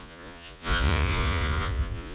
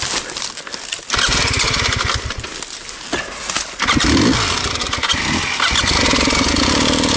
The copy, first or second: first